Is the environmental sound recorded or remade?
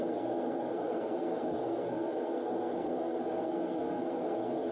remade